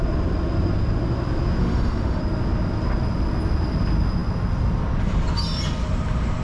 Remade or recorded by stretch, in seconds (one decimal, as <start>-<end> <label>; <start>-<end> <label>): 0.0-1.6 recorded; 1.6-2.2 remade; 2.2-6.4 recorded